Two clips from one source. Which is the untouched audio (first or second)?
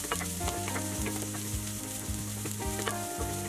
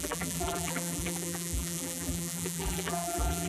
first